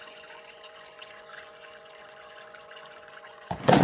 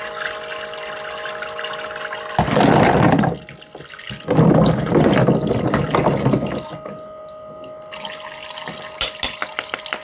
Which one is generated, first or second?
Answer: first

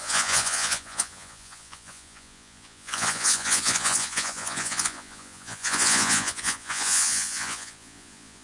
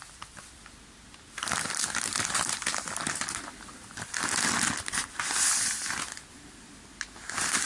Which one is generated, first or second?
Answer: first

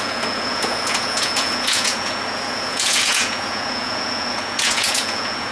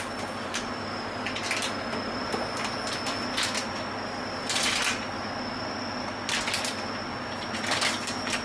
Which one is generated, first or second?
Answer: first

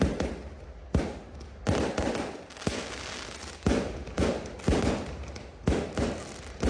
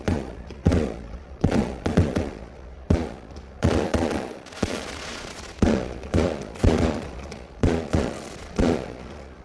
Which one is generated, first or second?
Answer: second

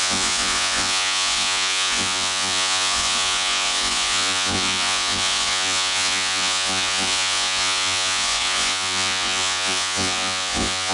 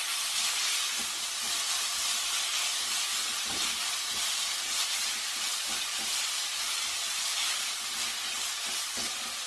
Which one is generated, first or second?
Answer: first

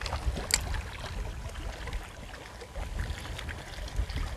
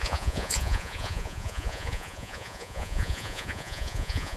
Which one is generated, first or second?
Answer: second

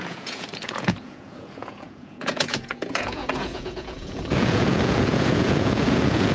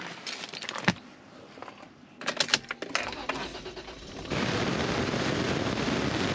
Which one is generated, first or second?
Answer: first